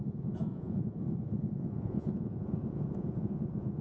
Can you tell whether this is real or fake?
fake